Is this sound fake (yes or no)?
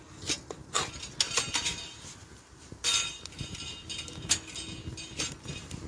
no